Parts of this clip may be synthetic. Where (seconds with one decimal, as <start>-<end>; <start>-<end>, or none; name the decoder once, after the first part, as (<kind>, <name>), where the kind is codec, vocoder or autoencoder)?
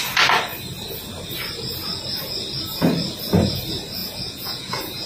4.0-5.1 (vocoder, Vocos)